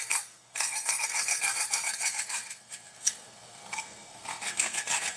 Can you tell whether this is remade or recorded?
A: remade